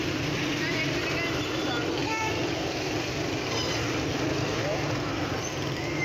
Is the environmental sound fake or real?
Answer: fake